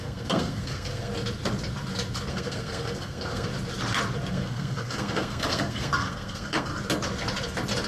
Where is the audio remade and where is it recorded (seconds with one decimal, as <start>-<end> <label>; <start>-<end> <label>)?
0.0-1.1 remade; 1.1-2.3 recorded; 2.3-3.5 remade; 3.5-4.3 recorded; 4.3-6.7 remade; 6.7-7.9 recorded